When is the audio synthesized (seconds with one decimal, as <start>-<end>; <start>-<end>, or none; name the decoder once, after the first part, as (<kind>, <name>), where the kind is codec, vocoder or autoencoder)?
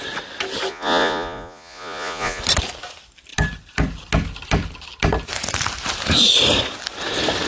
0.7-2.4 (vocoder, Vocos)